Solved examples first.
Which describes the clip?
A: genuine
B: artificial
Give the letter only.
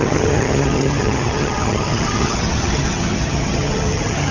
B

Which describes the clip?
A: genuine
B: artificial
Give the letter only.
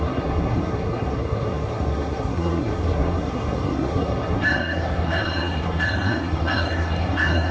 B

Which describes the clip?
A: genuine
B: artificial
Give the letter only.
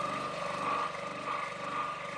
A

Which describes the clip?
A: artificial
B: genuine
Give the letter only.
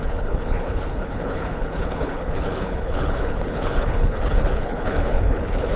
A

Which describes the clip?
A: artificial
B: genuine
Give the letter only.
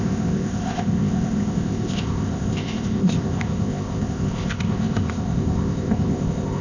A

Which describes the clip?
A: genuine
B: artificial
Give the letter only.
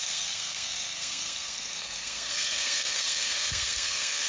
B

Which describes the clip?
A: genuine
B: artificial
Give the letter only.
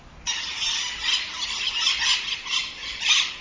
A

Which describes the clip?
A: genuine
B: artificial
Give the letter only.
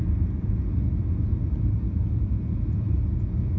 A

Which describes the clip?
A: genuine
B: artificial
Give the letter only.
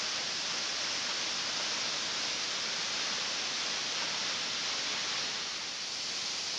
A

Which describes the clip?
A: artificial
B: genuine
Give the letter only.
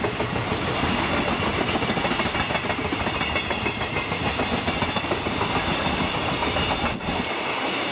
B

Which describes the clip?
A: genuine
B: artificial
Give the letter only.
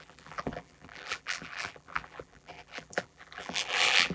B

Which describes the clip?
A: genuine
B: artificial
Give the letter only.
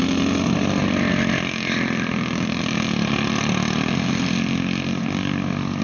A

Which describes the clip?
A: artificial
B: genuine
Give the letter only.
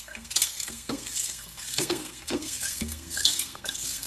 A